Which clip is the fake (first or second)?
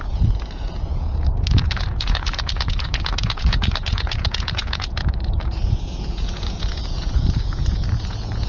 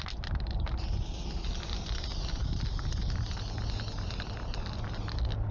first